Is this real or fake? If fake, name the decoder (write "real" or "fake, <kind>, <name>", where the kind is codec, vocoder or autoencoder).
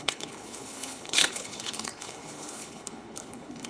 fake, codec, HILCodec